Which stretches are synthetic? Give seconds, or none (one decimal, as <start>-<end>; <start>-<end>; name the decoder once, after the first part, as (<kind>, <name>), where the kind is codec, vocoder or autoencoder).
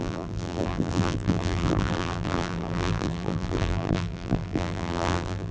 0.0-5.5 (vocoder, BigVGAN v2)